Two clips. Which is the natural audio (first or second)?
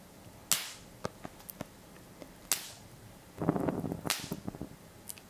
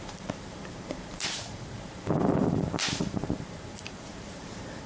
first